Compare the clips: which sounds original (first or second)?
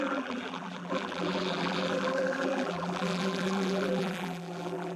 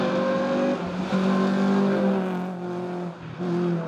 second